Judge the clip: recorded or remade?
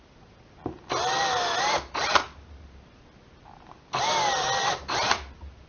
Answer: recorded